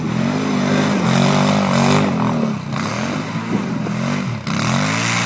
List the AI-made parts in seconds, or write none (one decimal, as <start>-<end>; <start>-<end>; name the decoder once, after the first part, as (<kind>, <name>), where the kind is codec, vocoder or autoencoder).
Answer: none